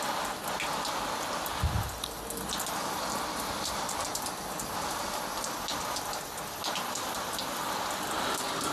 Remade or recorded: recorded